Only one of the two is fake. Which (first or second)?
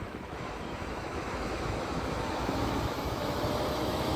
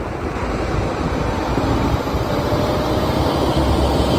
first